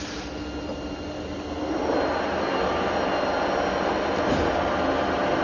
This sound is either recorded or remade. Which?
recorded